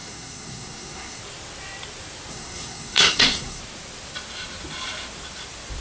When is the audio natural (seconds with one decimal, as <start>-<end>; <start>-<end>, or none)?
1.2-2.3; 3.6-5.8